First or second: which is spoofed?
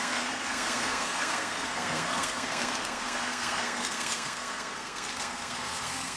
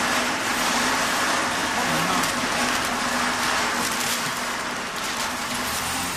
first